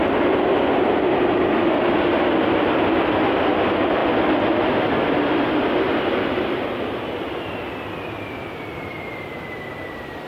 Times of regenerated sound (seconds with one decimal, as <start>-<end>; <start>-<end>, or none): none